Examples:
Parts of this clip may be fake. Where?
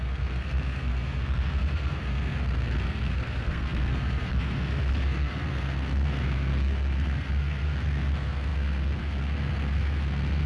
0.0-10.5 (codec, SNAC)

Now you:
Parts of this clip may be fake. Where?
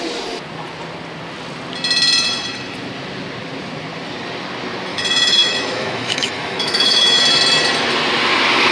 4.9-7.2 (autoencoder, DAC-VAE)